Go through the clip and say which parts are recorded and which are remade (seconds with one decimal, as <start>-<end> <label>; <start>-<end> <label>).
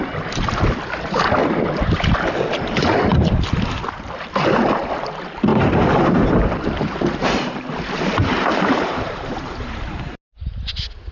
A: 0.0-5.5 recorded; 5.5-7.5 remade; 7.5-8.4 recorded; 8.4-10.0 remade; 10.0-11.1 recorded